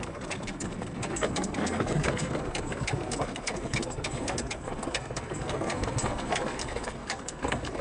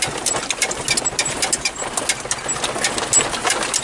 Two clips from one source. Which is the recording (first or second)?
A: second